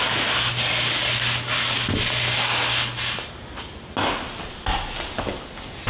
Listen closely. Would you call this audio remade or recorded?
recorded